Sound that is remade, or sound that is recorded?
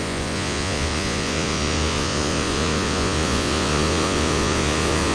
remade